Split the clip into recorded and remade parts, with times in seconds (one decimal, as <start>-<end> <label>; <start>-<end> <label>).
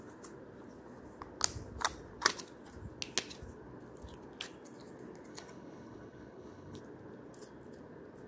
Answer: 0.0-5.3 recorded; 5.3-6.8 remade; 6.8-8.3 recorded